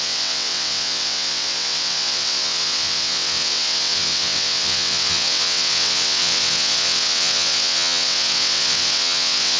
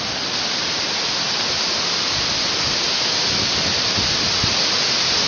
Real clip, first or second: second